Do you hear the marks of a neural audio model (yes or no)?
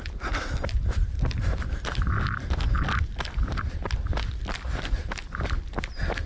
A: no